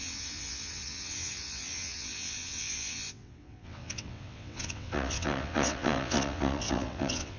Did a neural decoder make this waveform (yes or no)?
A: yes